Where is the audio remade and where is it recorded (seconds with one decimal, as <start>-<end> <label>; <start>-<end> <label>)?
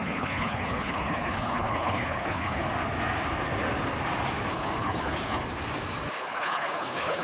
0.0-2.6 remade; 2.6-4.5 recorded; 4.5-5.4 remade; 5.4-6.2 recorded; 6.2-7.2 remade